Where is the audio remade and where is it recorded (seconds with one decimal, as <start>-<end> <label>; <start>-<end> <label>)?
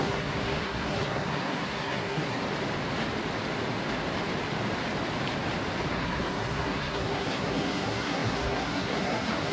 0.0-2.4 remade; 2.4-5.9 recorded; 5.9-9.5 remade